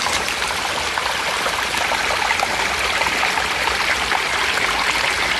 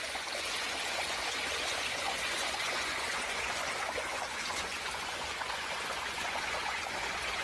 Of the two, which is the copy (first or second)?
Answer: second